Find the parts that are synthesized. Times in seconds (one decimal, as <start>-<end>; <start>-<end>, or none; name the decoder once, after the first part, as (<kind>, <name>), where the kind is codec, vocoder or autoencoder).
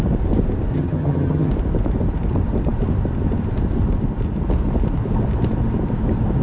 0.7-1.5 (vocoder, HiFi-GAN)